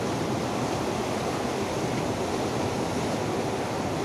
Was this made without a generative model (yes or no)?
yes